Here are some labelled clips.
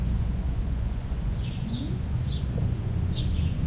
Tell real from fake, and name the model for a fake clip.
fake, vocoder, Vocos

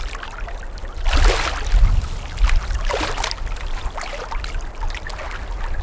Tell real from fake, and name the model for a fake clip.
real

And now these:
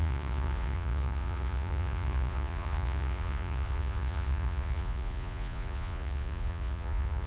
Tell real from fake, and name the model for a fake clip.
fake, vocoder, Vocos